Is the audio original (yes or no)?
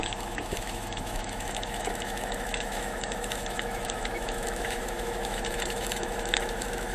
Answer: no